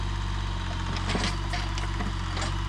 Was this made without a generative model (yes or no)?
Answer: yes